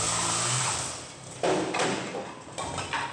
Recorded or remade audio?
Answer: recorded